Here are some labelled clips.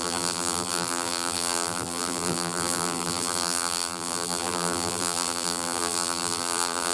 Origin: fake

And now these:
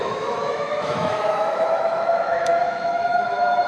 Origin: fake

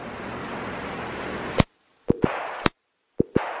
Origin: real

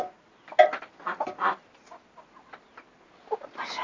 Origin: real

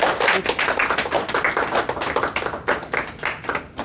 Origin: real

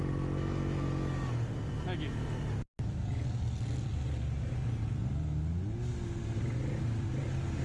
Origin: real